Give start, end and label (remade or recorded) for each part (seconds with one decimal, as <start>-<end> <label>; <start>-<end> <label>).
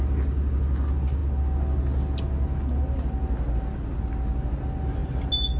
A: 0.0-5.6 recorded